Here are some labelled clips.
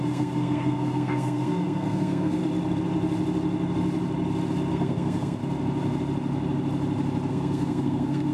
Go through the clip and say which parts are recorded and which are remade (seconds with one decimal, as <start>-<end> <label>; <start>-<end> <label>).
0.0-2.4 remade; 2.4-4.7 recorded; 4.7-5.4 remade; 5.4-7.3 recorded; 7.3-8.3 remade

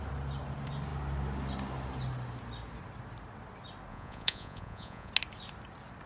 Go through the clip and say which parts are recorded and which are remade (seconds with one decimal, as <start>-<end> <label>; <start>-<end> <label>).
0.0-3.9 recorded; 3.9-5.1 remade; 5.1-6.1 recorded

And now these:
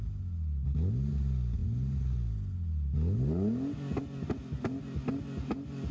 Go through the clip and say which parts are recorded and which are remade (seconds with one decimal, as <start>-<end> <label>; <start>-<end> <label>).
0.0-5.9 recorded

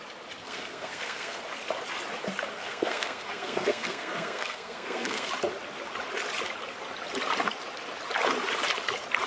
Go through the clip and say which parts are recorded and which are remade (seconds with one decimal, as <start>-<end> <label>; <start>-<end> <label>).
0.0-0.4 recorded; 0.4-1.4 remade; 1.4-2.5 recorded; 2.5-5.3 remade; 5.3-9.3 recorded

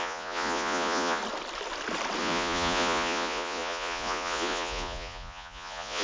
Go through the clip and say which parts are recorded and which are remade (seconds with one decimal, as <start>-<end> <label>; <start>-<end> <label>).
0.0-1.2 remade; 1.2-2.2 recorded; 2.2-6.0 remade